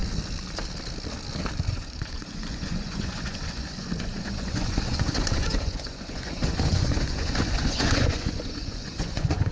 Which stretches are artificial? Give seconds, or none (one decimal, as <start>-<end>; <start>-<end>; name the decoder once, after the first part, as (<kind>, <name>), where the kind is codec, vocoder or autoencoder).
1.7-9.5 (vocoder, Vocos)